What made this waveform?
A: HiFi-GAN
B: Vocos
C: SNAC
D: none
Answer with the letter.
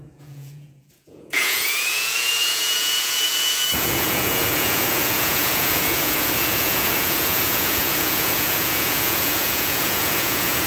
B